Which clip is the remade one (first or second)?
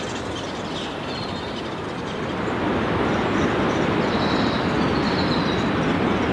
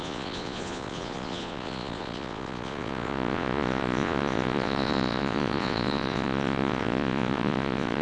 second